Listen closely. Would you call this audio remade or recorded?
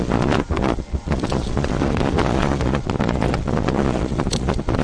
remade